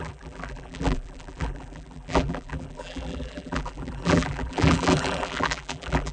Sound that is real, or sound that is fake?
fake